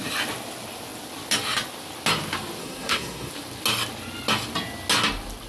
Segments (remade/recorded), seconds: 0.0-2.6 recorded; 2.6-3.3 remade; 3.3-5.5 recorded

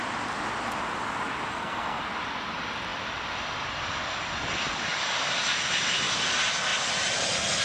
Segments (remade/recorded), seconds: 0.0-1.5 recorded; 1.5-2.0 remade; 2.0-7.6 recorded

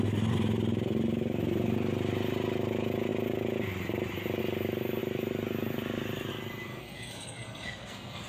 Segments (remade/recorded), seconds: 0.0-6.7 recorded; 6.7-8.3 remade

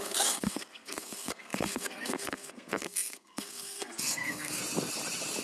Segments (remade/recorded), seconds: 0.0-4.6 remade; 4.6-5.4 recorded

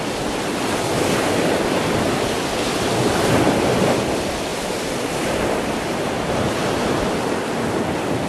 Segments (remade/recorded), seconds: 0.0-8.3 recorded

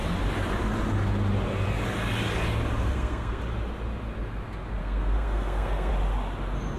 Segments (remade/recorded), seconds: 0.0-2.9 recorded; 2.9-3.4 remade; 3.4-4.8 recorded; 4.8-5.9 remade; 5.9-6.8 recorded

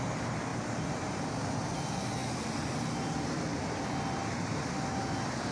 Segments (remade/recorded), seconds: 0.0-5.5 recorded

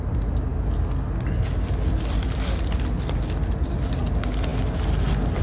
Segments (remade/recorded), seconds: 0.0-5.4 recorded